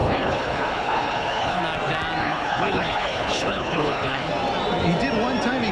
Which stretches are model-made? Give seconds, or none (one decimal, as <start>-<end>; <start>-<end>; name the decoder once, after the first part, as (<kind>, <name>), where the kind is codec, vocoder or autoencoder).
0.0-1.6 (codec, HILCodec); 2.2-4.3